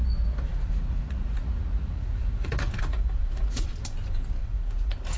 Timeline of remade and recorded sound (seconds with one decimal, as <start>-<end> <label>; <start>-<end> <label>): 0.0-0.5 recorded; 0.5-3.6 remade; 3.6-4.4 recorded; 4.4-5.2 remade